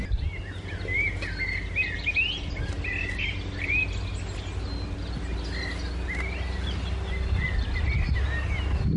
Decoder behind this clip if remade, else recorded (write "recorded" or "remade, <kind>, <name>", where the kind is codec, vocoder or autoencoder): recorded